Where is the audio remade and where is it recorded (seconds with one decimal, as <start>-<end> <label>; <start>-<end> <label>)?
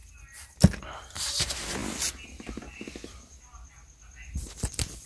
0.0-5.1 recorded